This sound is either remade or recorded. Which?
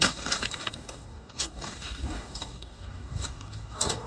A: remade